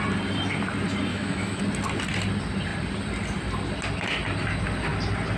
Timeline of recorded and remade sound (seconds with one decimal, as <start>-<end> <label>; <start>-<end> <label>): 0.0-1.1 recorded; 1.1-1.6 remade; 1.6-5.4 recorded